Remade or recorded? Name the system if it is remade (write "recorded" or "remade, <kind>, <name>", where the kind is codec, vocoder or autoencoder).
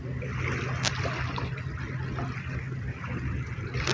recorded